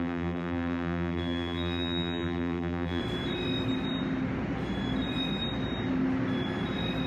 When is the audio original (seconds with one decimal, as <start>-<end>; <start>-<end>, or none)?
3.0-7.1